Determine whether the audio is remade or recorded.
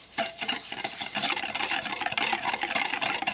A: remade